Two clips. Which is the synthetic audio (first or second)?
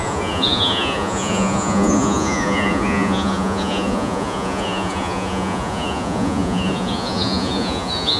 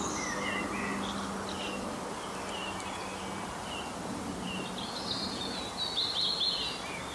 first